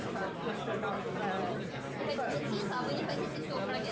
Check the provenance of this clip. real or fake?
real